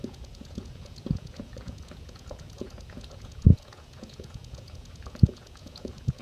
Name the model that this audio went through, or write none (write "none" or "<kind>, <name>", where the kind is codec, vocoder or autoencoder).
vocoder, Vocos